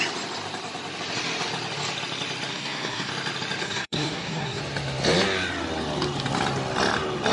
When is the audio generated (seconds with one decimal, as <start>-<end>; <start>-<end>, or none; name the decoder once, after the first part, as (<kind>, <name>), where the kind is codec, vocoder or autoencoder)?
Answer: 2.5-3.1 (codec, SNAC); 3.6-4.6